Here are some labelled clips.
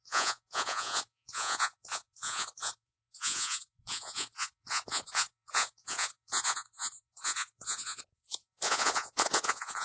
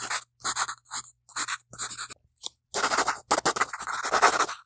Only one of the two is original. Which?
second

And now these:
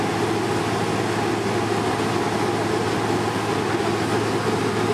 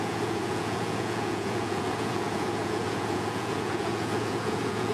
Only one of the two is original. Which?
first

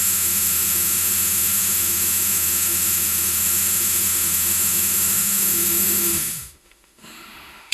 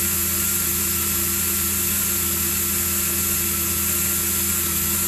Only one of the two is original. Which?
second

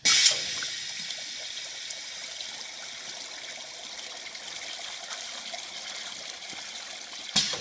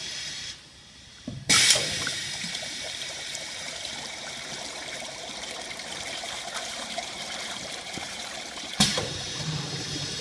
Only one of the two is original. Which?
first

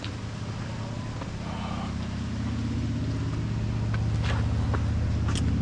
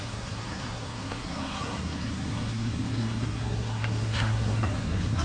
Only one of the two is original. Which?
first